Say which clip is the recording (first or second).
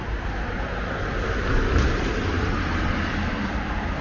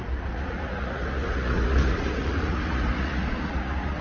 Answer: first